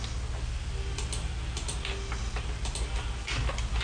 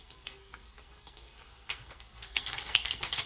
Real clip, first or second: first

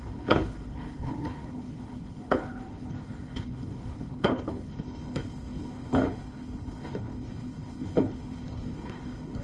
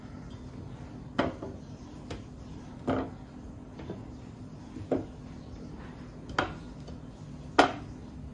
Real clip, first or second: second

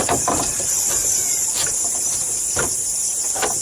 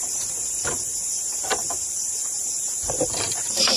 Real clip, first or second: first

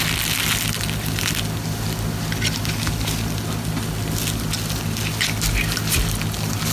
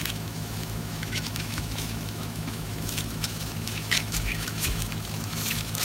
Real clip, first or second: first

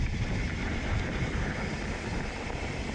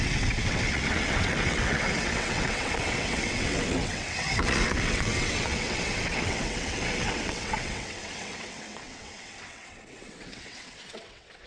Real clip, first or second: first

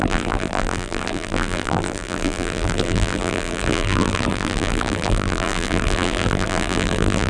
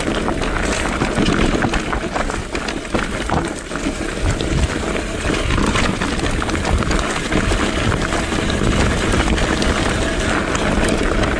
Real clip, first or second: second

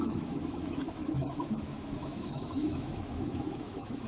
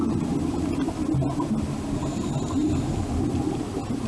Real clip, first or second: second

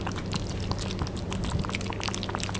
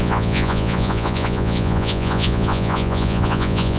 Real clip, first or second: first